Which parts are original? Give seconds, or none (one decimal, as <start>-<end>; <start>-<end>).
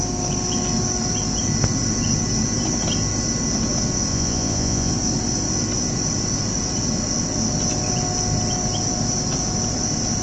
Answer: 0.0-4.1; 4.9-10.2